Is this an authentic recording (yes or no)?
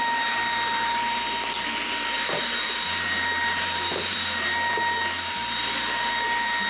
no